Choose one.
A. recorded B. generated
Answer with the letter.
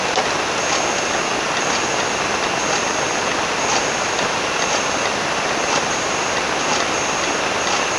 A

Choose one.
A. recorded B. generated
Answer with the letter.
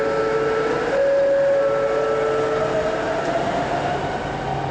A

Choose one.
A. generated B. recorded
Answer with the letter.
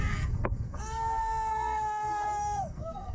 A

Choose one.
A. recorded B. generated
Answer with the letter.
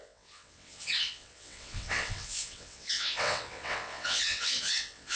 B